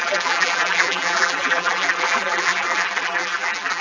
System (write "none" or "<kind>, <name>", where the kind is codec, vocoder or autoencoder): vocoder, BigVGAN v2